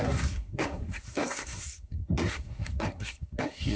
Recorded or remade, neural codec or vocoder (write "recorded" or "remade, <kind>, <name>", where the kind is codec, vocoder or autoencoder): remade, codec, SNAC